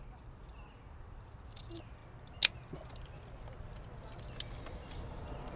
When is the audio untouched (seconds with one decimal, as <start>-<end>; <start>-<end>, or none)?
0.0-5.6